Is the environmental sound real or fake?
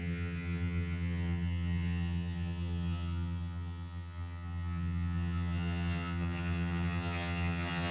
fake